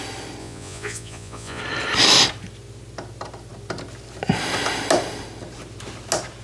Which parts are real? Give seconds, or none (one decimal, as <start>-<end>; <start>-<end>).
0.0-0.4; 1.6-6.4

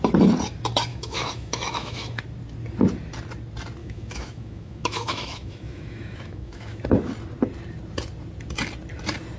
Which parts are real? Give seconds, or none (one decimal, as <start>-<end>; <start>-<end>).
0.0-0.9; 2.2-3.8; 6.8-9.4

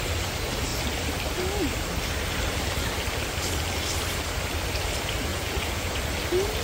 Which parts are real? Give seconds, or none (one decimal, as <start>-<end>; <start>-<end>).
0.0-5.3; 6.0-6.6

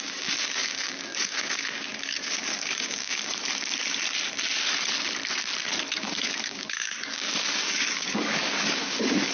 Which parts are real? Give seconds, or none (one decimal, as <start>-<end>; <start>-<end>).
3.4-6.0